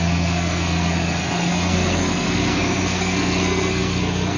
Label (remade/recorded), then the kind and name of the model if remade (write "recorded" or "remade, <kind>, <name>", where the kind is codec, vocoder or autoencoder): remade, codec, SNAC